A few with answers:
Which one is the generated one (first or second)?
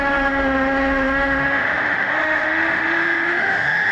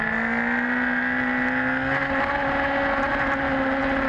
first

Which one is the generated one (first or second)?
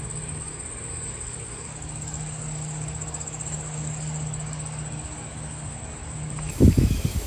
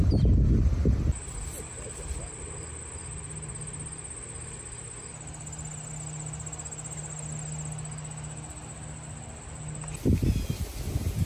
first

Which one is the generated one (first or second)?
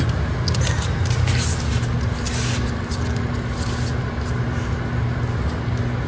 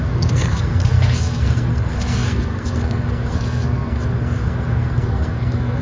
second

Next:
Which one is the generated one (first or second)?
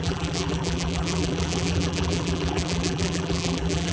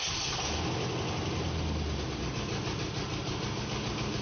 first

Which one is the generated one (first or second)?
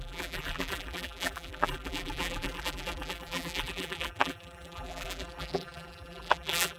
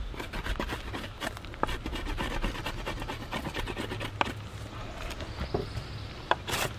first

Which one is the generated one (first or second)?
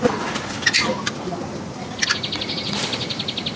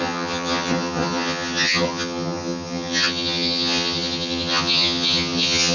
second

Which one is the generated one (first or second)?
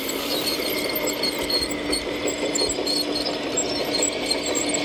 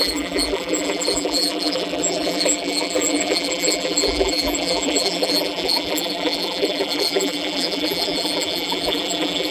second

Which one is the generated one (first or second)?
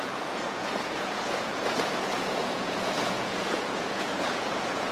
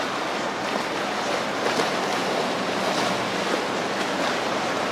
first